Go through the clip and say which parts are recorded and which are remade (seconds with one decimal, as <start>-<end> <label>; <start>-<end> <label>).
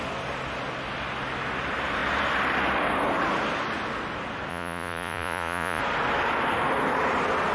0.0-4.5 recorded; 4.5-5.8 remade; 5.8-7.5 recorded